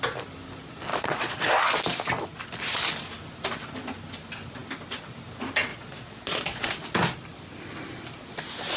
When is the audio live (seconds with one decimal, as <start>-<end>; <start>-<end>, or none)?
0.0-0.9; 1.5-5.7; 6.7-8.8

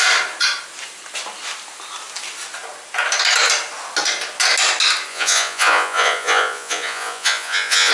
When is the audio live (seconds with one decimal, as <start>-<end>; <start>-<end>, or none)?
0.0-5.1

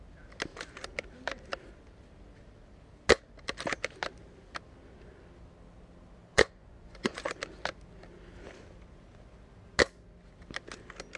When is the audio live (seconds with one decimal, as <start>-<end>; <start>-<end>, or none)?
0.0-6.3; 7.3-11.2

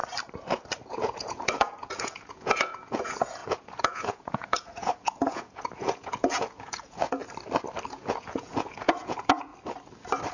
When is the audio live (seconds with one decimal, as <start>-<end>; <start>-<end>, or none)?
0.0-0.9; 7.2-7.9; 9.5-10.3

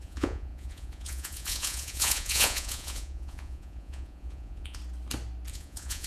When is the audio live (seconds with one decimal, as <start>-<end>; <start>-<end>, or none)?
4.8-5.5